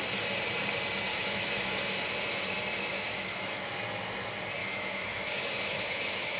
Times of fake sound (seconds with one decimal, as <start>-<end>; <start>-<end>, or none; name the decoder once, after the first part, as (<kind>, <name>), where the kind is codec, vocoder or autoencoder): 1.1-1.7 (autoencoder, DAC-VAE); 2.9-3.8; 4.6-6.4